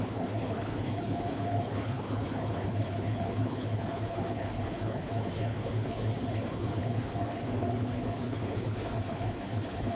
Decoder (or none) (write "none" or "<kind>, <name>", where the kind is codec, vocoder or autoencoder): codec, HILCodec